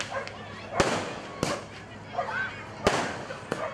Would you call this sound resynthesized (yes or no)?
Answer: no